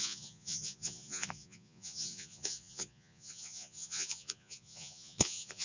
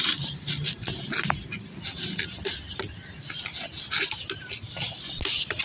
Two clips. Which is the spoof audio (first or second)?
first